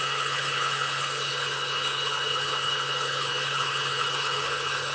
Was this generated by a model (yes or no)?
yes